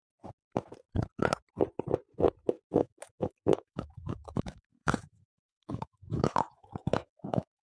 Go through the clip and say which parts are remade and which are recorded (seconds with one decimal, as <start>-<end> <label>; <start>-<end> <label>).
0.0-2.8 recorded; 2.8-7.6 remade